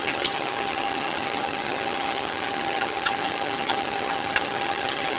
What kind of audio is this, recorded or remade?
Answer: remade